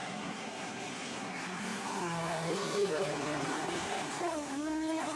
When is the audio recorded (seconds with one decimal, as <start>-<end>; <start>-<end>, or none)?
none